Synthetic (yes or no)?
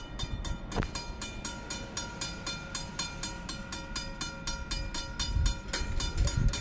no